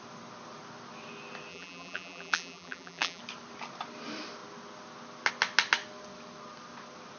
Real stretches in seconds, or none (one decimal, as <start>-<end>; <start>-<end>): 0.0-1.5; 3.2-7.2